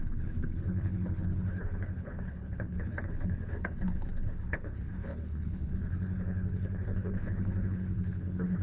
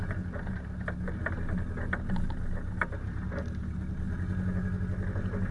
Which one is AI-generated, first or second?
first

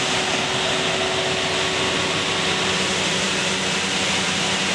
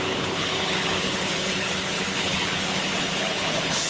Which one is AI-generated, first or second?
second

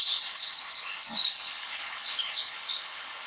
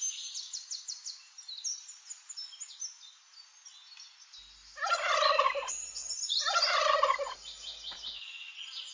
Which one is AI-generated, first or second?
first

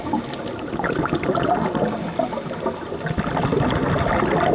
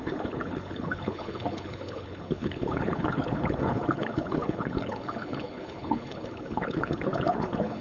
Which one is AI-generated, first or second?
second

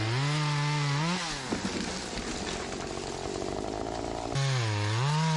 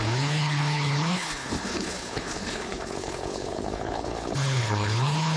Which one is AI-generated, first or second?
second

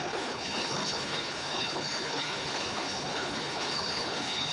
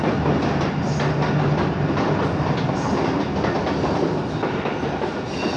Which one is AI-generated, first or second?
first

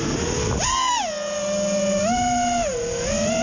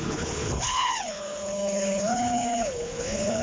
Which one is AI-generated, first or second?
second